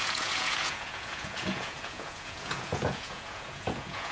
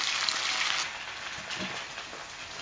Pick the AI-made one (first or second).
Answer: first